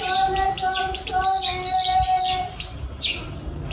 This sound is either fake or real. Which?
real